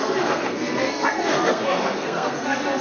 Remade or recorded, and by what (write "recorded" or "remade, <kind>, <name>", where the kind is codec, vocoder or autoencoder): remade, codec, SNAC